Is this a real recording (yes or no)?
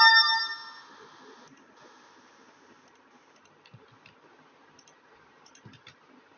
yes